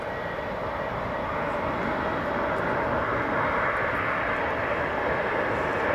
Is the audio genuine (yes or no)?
yes